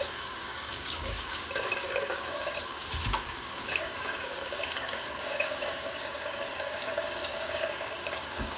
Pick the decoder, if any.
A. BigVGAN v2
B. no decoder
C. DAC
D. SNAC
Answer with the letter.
C